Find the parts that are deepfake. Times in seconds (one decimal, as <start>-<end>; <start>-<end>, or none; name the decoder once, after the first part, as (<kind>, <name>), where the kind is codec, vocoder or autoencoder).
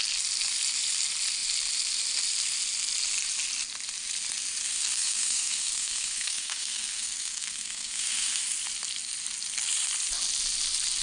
4.6-8.4 (codec, SNAC)